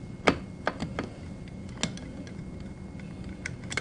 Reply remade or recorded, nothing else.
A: recorded